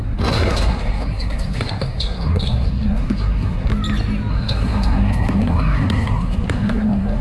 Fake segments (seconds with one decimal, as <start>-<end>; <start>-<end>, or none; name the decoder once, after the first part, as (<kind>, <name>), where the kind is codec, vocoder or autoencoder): 0.0-3.7 (codec, SNAC); 4.3-7.2